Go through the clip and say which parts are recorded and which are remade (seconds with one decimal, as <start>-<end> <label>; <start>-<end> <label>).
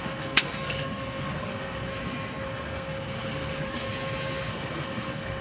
0.0-1.9 remade; 1.9-2.5 recorded; 2.5-3.9 remade; 3.9-4.5 recorded; 4.5-5.4 remade